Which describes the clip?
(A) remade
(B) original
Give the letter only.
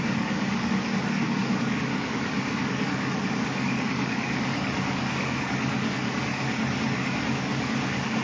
A